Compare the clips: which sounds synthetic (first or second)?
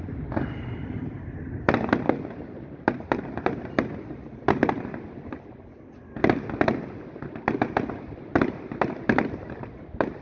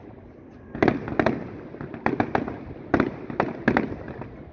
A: first